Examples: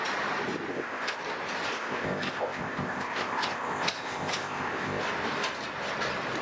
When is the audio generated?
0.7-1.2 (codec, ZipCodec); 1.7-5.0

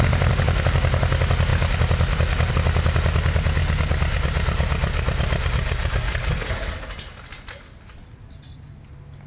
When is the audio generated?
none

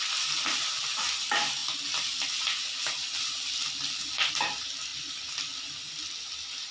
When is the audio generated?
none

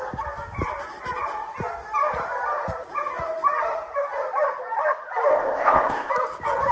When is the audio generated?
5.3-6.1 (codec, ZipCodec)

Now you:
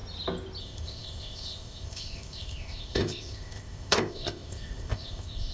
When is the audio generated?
0.6-5.5 (codec, ZipCodec)